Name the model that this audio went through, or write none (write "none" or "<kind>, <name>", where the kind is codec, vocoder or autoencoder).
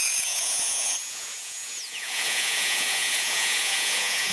vocoder, Vocos